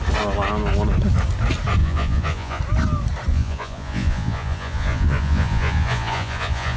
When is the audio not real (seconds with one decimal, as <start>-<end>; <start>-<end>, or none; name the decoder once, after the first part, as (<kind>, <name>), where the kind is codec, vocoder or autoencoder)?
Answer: 1.8-2.6 (vocoder, Vocos); 3.3-6.8

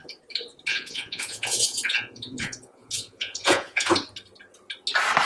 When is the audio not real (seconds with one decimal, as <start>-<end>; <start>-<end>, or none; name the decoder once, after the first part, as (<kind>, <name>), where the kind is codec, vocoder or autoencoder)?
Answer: 0.7-3.9 (vocoder, Vocos)